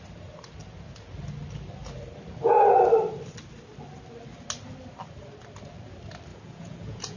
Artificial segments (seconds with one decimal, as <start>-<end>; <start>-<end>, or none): 6.3-7.2